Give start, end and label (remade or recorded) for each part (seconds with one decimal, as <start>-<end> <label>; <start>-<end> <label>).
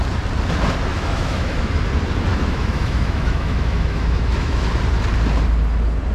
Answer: 0.0-0.9 recorded; 0.9-1.7 remade; 1.7-2.3 recorded; 2.3-4.6 remade; 4.6-6.1 recorded